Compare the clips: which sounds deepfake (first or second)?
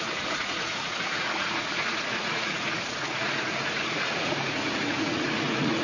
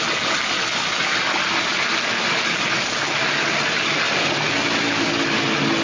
first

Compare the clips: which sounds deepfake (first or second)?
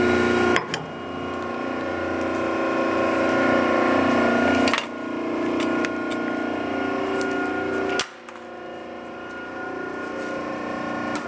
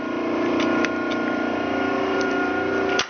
second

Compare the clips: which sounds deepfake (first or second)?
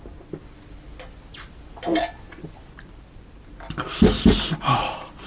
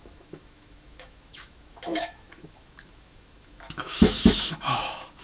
second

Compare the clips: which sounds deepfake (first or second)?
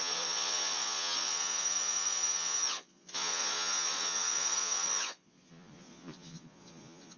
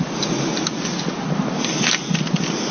first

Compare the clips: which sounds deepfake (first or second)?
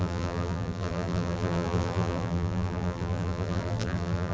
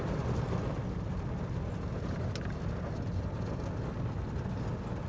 first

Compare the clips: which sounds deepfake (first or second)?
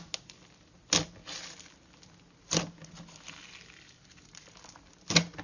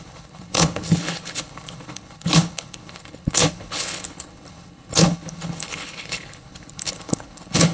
second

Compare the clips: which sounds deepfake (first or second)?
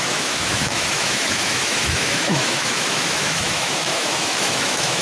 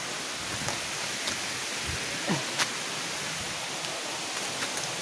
first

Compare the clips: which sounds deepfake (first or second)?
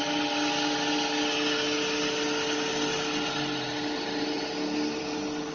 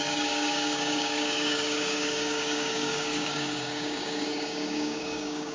second